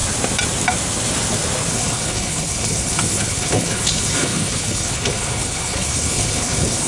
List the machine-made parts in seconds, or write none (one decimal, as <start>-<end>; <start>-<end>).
1.7-6.9